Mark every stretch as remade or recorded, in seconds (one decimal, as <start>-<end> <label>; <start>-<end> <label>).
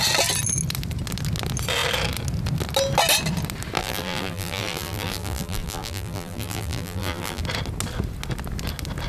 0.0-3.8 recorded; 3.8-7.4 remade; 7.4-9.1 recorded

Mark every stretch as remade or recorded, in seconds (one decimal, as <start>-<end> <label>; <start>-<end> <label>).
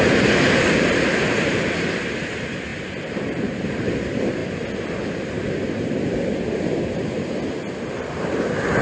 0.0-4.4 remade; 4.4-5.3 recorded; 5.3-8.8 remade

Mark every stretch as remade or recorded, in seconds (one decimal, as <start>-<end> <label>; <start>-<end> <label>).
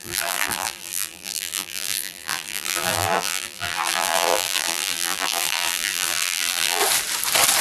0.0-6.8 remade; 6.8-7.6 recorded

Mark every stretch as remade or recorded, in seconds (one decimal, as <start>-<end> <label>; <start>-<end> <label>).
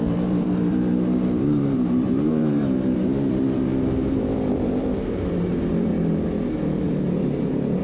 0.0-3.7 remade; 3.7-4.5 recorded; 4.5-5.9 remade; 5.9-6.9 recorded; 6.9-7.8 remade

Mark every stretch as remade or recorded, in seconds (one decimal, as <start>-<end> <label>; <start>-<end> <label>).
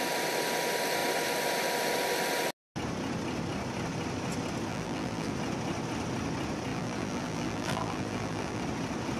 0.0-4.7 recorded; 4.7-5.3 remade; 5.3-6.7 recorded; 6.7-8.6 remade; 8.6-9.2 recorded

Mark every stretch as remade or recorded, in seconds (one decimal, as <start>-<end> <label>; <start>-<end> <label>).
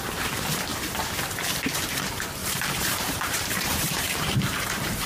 0.0-2.4 recorded; 2.4-5.1 remade